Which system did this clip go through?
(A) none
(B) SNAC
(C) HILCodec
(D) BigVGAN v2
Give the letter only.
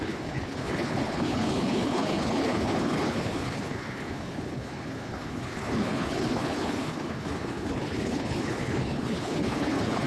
C